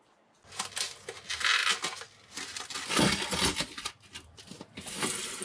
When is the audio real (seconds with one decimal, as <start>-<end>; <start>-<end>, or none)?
0.0-1.6; 3.9-5.4